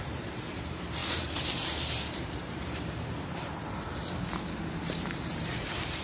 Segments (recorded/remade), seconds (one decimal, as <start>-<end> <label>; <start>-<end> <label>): 0.0-4.0 remade; 4.0-4.6 recorded; 4.6-6.0 remade